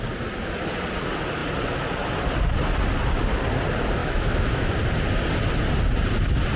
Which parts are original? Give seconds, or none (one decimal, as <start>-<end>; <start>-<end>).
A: 0.0-4.0; 4.7-6.6